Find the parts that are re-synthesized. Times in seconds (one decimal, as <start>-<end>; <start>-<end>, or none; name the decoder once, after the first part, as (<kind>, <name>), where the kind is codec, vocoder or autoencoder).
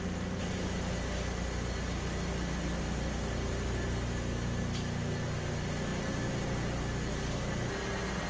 none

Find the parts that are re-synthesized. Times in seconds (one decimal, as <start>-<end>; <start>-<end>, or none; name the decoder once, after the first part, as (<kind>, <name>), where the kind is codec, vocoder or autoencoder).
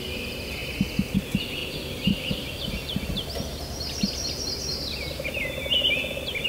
1.6-5.5 (vocoder, BigVGAN v2)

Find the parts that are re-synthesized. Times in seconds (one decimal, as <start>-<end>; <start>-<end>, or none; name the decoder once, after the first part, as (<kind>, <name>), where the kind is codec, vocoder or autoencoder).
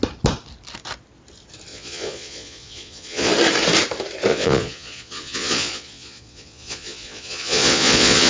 1.7-3.3 (vocoder, Vocos); 4.3-8.3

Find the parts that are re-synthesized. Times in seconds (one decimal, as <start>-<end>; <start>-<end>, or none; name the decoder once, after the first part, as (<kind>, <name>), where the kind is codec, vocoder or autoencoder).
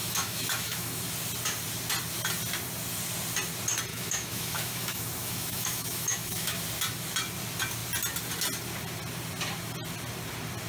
0.0-1.0 (autoencoder, DAC-VAE); 3.9-6.6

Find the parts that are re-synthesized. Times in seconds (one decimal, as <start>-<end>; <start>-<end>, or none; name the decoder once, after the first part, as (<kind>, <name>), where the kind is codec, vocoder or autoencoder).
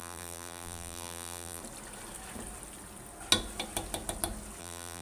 0.0-1.6 (vocoder, BigVGAN v2); 4.6-5.0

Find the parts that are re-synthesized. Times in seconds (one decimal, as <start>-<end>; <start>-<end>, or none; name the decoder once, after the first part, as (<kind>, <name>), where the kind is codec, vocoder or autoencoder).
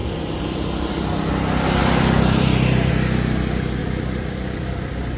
1.8-2.9 (vocoder, BigVGAN v2); 3.8-5.2